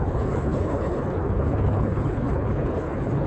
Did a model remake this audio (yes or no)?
yes